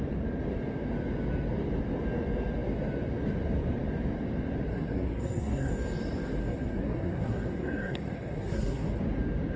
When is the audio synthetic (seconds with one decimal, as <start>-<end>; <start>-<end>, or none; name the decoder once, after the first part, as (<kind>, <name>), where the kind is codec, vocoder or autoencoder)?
4.7-5.7 (codec, SNAC); 6.4-9.0